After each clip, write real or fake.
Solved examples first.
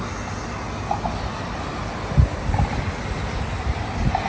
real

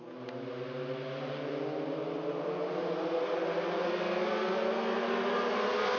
real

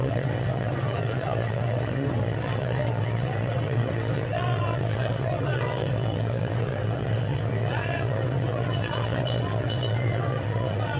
fake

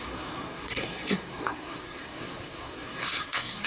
fake